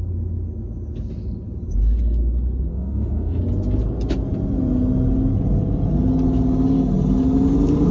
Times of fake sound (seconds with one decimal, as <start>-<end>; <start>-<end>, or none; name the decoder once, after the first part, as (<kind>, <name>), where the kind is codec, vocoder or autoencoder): 2.7-3.4 (autoencoder, DAC-VAE)